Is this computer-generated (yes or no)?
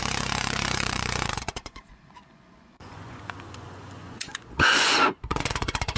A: yes